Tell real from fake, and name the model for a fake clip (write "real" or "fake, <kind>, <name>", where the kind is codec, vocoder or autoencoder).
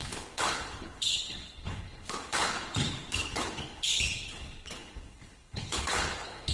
fake, codec, HILCodec